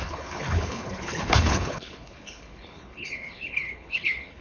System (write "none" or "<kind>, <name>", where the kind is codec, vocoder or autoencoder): codec, HILCodec